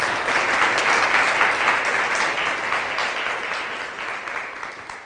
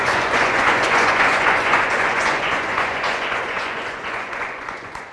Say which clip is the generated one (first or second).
second